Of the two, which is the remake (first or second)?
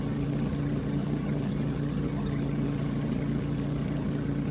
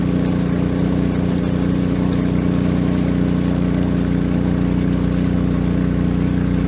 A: first